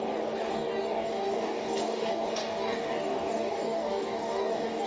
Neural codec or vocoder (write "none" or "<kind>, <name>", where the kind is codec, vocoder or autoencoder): codec, DAC